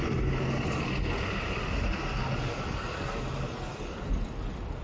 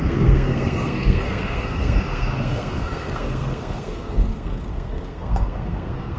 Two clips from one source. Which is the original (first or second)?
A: first